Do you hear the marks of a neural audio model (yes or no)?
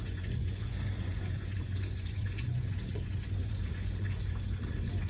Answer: yes